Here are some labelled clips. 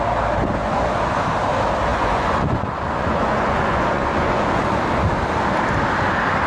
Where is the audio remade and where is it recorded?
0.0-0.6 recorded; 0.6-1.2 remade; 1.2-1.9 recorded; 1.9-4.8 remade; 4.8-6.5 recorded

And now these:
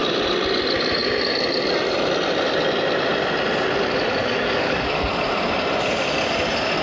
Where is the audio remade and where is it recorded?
0.0-4.2 recorded; 4.2-5.1 remade; 5.1-6.8 recorded

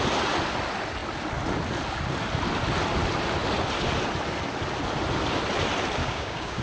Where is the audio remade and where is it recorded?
0.0-6.0 recorded; 6.0-6.6 remade

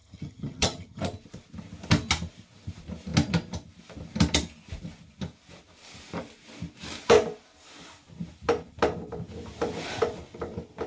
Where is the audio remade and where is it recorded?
0.0-1.0 remade; 1.0-10.9 recorded

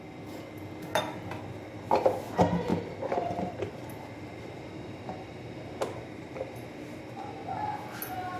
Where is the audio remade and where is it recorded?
0.0-2.7 recorded; 2.7-7.0 remade; 7.0-8.4 recorded

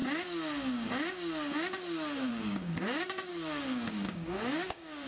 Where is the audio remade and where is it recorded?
0.0-2.3 recorded; 2.3-5.1 remade

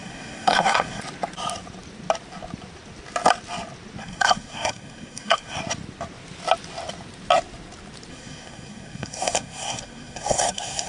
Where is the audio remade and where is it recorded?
0.0-1.0 remade; 1.0-4.0 recorded; 4.0-5.6 remade; 5.6-8.1 recorded; 8.1-10.9 remade